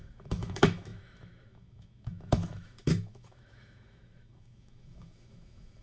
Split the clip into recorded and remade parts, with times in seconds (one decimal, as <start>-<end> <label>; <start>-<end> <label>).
0.0-5.8 remade